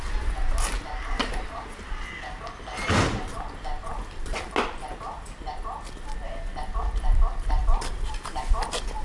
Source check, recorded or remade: recorded